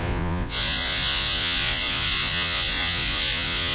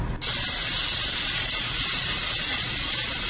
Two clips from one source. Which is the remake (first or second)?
first